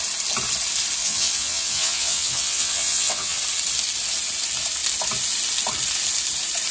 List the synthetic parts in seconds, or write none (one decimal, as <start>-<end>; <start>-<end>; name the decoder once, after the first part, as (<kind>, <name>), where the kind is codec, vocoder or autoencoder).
1.0-3.4 (vocoder, WaveNeXt)